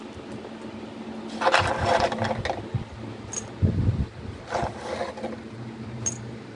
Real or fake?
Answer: real